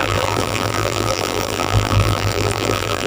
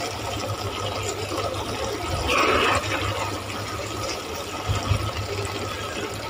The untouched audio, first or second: second